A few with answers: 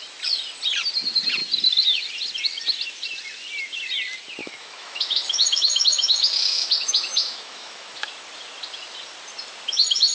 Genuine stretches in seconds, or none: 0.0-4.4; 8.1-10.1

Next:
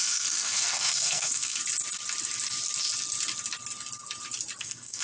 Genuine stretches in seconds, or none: 1.6-4.6

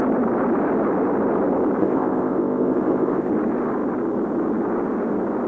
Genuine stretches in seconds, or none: 0.0-1.8; 3.3-5.5

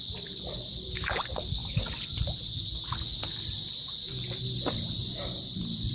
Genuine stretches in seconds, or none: 1.6-5.1

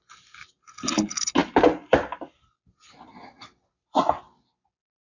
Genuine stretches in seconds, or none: 0.0-5.0

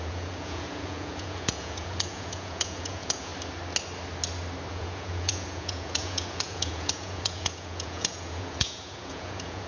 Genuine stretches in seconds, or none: 3.3-4.7

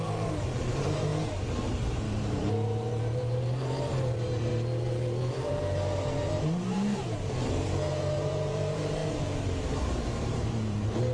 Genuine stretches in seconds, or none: 1.1-1.7; 4.5-5.3

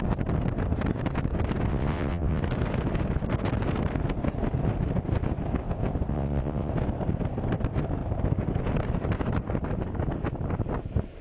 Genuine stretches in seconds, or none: 0.0-1.7; 2.4-6.1; 6.7-11.2